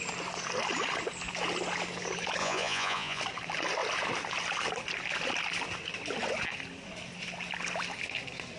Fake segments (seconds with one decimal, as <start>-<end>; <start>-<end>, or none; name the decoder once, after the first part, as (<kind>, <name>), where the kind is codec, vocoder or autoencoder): 2.4-3.2 (vocoder, Vocos)